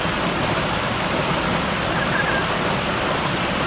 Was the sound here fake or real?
real